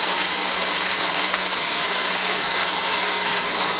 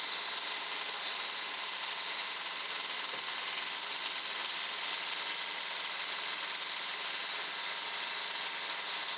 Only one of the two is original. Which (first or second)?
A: second